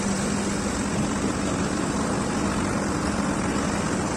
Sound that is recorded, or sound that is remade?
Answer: recorded